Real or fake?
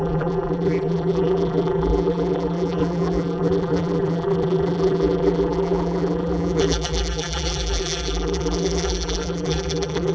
fake